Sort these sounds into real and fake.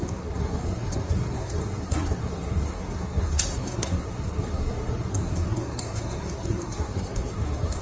fake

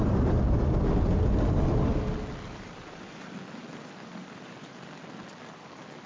real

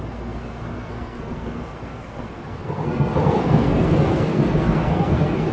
fake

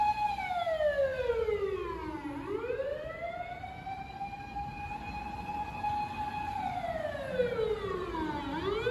real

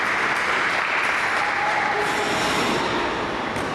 real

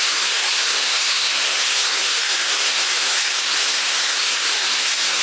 fake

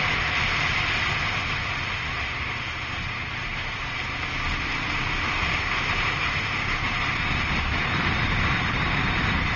real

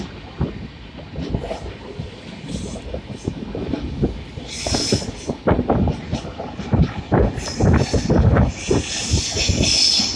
real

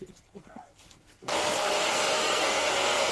fake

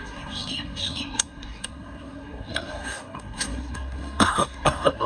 fake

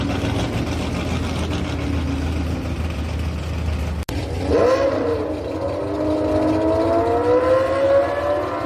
real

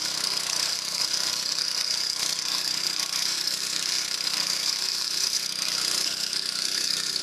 fake